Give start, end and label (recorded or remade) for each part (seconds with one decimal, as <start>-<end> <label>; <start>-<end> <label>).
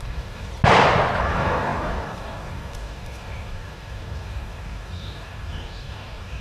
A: 0.0-0.5 remade; 0.5-1.2 recorded; 1.2-6.4 remade